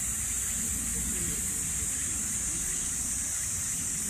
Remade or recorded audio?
recorded